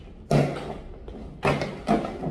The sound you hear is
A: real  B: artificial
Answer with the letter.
A